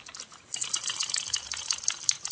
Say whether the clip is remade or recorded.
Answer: recorded